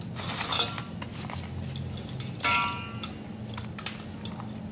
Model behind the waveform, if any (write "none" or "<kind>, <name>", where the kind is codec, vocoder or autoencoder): none